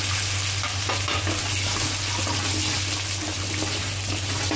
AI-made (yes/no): no